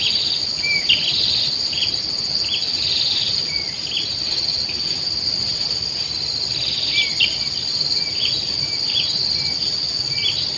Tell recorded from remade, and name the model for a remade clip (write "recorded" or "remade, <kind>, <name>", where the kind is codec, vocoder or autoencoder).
recorded